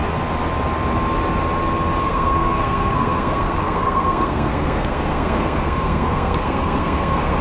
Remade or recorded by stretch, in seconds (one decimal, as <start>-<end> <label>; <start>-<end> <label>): 0.0-2.0 recorded; 2.0-7.4 remade